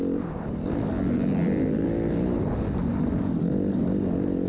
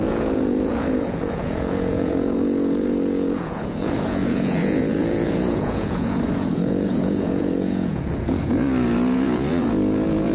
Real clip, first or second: first